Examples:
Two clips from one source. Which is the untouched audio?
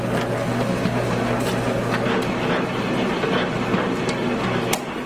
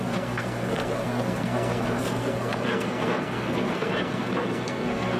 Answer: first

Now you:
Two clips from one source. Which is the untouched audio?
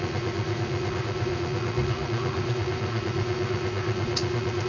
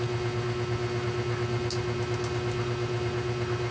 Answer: second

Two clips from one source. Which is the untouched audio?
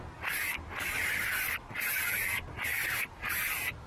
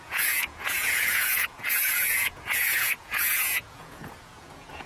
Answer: first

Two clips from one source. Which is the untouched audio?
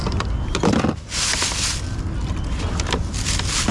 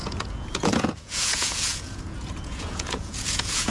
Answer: first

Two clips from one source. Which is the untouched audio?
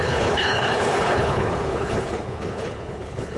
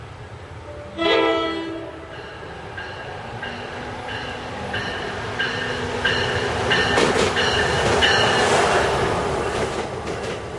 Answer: second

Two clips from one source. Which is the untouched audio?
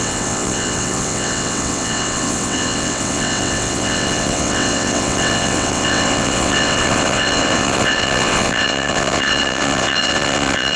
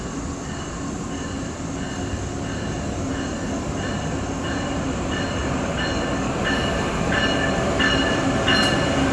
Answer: second